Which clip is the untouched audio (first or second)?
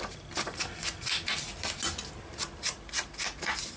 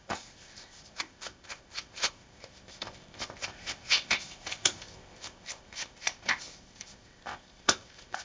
first